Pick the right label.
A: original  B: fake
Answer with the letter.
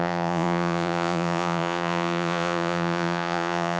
B